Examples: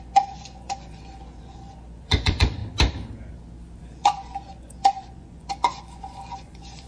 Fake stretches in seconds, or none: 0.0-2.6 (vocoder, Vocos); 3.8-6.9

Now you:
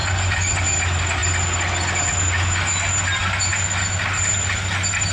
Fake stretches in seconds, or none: 0.0-0.6 (vocoder, Vocos)

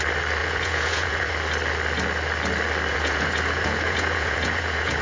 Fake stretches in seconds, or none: 0.4-1.3 (vocoder, Vocos); 2.9-5.0

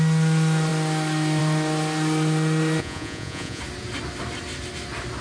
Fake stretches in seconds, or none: 2.8-3.6 (vocoder, Vocos)

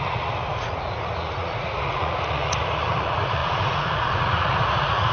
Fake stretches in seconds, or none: 0.0-5.1 (vocoder, Vocos)

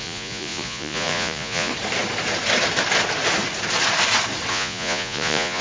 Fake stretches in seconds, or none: 0.0-1.7 (vocoder, Vocos); 4.5-5.6